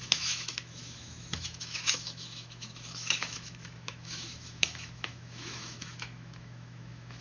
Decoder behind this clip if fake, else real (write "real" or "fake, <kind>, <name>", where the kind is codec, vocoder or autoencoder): fake, autoencoder, DAC-VAE